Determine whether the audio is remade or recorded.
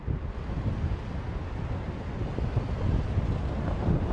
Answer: recorded